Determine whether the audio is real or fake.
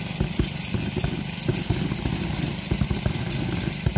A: real